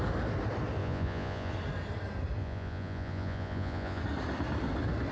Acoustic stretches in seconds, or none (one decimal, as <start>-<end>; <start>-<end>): 0.0-0.8; 1.5-2.4; 4.0-5.1